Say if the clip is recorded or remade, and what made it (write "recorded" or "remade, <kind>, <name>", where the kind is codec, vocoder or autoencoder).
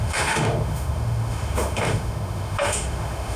remade, autoencoder, DAC-VAE